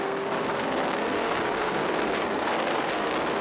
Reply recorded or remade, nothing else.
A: remade